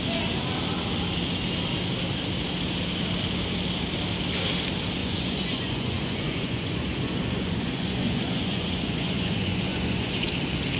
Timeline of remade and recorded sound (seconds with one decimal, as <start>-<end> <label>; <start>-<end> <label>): 0.0-5.0 recorded; 5.0-10.3 remade; 10.3-10.8 recorded